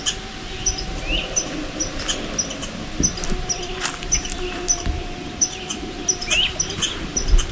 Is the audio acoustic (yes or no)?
yes